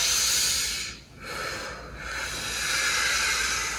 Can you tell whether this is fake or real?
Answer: real